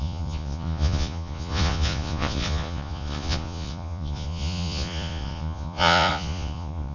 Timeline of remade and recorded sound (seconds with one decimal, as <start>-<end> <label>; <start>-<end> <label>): 0.0-6.9 remade